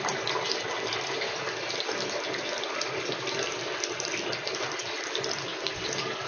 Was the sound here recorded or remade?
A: recorded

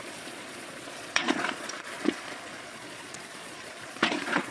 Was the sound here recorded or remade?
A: remade